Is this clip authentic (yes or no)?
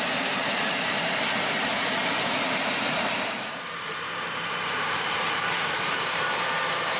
no